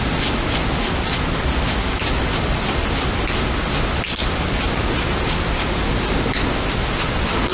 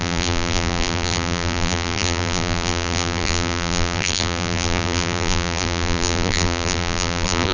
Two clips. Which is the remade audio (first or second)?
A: second